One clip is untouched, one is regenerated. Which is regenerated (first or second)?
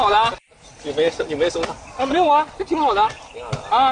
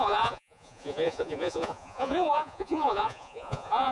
second